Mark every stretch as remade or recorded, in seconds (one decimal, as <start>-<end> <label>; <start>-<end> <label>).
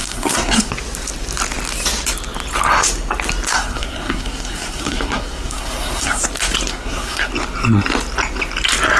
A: 0.0-0.7 remade; 0.7-3.5 recorded; 3.5-6.2 remade; 6.2-6.7 recorded; 6.7-7.3 remade; 7.3-9.0 recorded